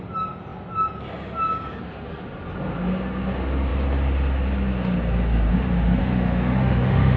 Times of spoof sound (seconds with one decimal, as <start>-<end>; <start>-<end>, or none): 6.0-7.2